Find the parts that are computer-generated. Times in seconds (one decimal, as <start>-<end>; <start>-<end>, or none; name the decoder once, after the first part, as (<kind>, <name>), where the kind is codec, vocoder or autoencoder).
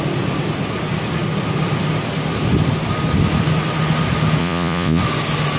4.4-5.0 (vocoder, Vocos)